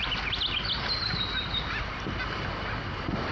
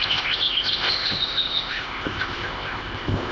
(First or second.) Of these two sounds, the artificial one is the second